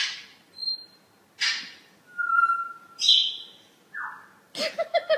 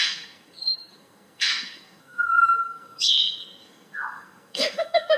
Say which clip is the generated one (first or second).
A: second